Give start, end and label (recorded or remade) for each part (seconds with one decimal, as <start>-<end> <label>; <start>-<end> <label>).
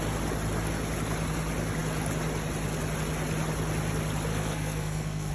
0.0-4.3 recorded; 4.3-5.3 remade